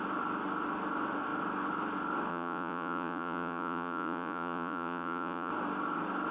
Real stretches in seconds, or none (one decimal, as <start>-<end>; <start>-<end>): 0.0-2.3; 5.5-6.3